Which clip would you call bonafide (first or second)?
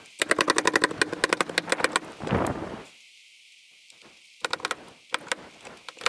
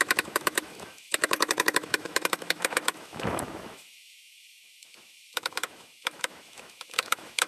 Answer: first